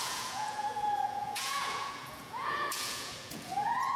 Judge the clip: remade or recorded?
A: remade